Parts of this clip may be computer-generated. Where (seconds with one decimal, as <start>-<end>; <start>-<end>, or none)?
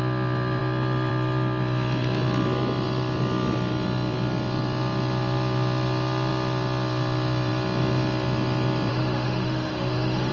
8.9-10.3